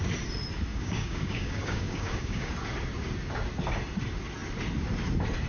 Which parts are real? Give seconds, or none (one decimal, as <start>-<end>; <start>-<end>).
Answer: 0.0-0.7; 2.5-5.5